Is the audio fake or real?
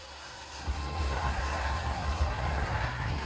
fake